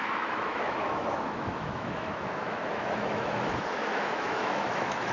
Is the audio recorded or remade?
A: remade